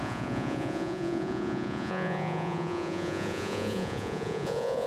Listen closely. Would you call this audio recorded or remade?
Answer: remade